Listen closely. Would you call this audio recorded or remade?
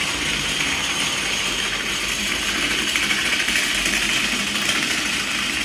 remade